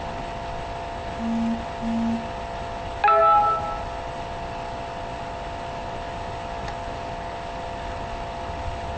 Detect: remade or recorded recorded